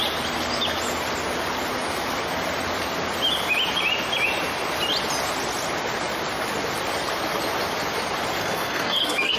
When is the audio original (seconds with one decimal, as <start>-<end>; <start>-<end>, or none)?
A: 0.0-8.4

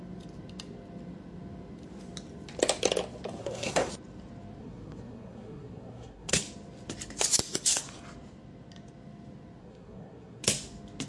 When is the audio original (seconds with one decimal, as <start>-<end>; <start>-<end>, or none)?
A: 0.0-3.4; 3.9-4.6; 6.4-9.6; 10.4-11.1